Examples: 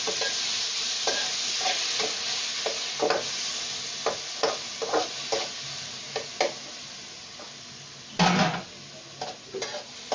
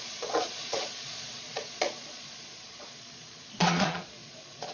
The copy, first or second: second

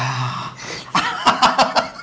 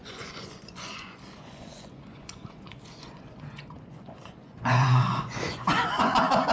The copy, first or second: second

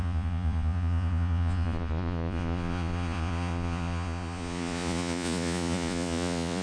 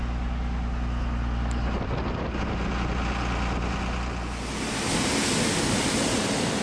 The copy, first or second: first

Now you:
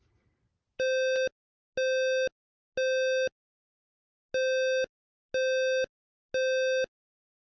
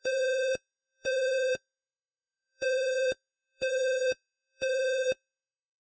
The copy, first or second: second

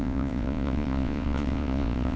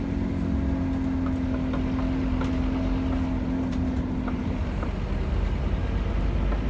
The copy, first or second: first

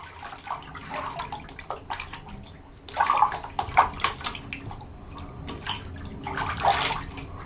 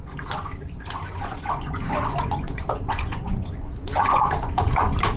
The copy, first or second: second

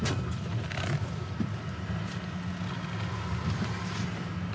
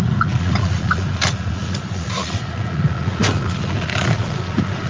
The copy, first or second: second